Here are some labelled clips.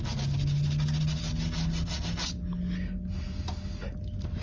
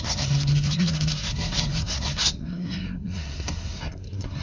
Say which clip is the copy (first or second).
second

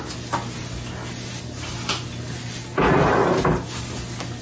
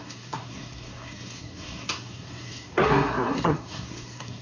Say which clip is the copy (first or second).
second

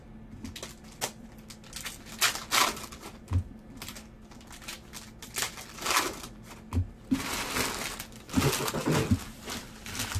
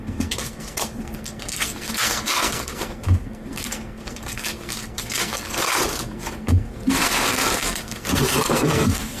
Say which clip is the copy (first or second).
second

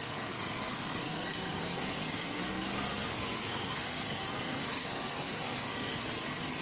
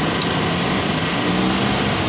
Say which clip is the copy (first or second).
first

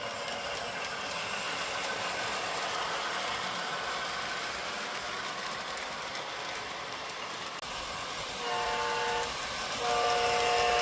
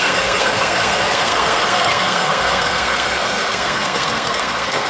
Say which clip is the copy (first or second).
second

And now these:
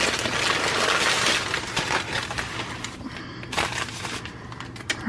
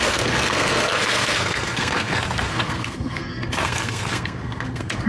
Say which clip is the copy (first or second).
second